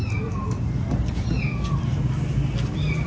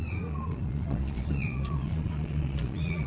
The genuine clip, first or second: first